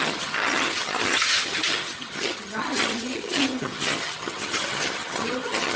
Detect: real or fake fake